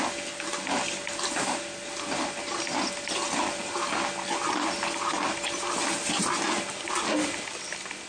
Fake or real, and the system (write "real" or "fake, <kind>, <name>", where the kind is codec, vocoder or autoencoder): real